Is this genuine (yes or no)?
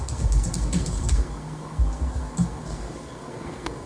no